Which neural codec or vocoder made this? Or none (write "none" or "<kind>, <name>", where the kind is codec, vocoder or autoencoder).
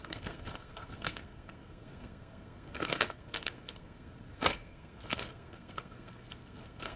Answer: codec, SNAC